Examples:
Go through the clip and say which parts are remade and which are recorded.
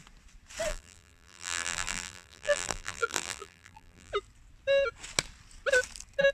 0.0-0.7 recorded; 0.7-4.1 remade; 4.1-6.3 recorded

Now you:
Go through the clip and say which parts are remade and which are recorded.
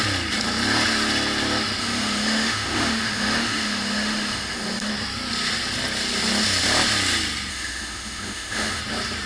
0.0-1.8 recorded; 1.8-4.9 remade; 4.9-7.5 recorded; 7.5-8.8 remade; 8.8-9.3 recorded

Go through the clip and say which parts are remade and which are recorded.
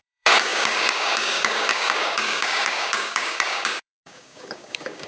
0.0-5.1 remade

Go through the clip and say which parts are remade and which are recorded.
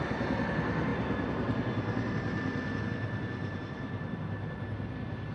0.0-3.4 recorded; 3.4-4.3 remade; 4.3-5.3 recorded